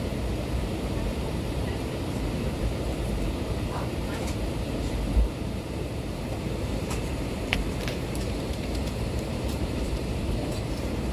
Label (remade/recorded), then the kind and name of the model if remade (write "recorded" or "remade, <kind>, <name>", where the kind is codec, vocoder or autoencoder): remade, vocoder, BigVGAN v2